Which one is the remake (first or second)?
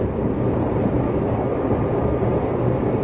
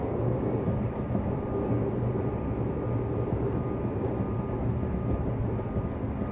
first